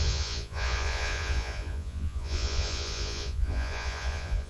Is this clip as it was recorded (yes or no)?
no